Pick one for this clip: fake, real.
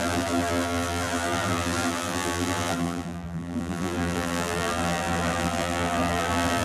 fake